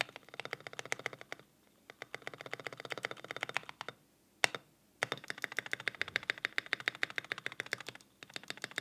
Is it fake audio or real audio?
real